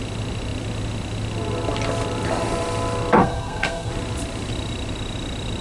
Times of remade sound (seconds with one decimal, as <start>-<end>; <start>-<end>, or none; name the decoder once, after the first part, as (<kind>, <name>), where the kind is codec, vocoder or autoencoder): 3.2-3.9 (codec, SNAC)